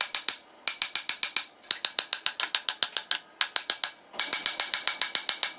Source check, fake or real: real